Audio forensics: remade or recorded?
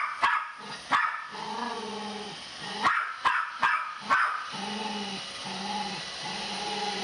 recorded